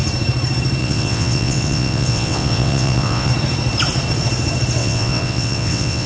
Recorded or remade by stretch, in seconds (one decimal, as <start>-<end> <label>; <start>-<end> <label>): 0.0-0.8 recorded; 0.8-3.3 remade; 3.3-4.8 recorded; 4.8-6.1 remade